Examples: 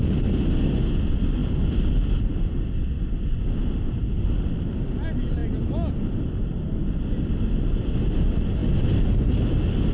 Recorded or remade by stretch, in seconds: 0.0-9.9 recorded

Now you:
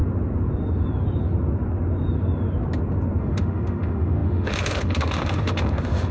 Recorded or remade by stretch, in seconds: 0.0-3.2 recorded; 3.2-6.1 remade

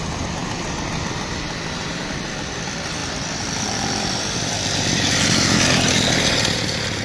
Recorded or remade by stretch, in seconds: 0.0-3.0 recorded; 3.0-5.0 remade; 5.0-7.0 recorded

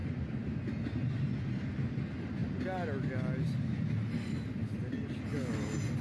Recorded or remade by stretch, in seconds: 0.0-6.0 recorded

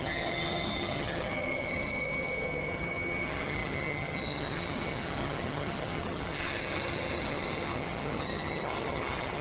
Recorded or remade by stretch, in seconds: 0.0-9.4 remade

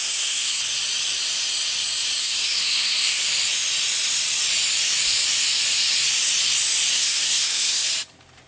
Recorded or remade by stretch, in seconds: 0.0-0.6 remade; 0.6-2.2 recorded; 2.2-3.2 remade; 3.2-6.9 recorded; 6.9-7.9 remade; 7.9-8.5 recorded

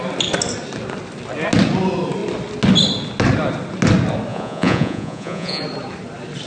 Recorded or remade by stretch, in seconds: 0.0-4.3 recorded; 4.3-5.6 remade; 5.6-6.5 recorded